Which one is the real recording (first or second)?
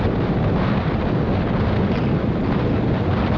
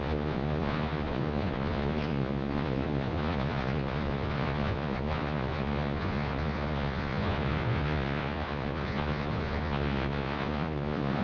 first